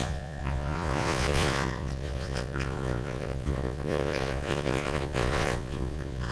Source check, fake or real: fake